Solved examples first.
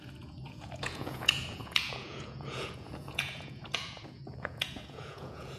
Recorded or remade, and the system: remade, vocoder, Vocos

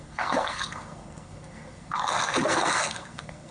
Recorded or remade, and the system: remade, codec, SNAC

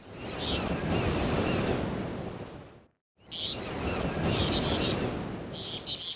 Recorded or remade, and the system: recorded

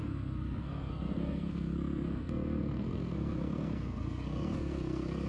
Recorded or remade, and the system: remade, codec, SNAC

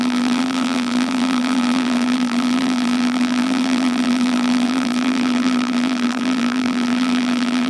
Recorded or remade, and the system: remade, vocoder, BigVGAN v2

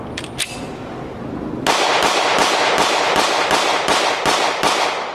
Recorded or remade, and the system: recorded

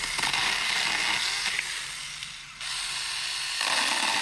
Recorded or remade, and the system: recorded